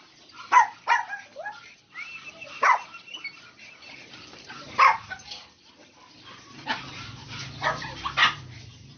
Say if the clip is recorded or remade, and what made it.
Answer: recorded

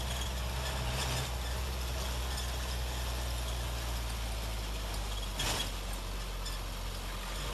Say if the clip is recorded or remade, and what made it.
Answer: recorded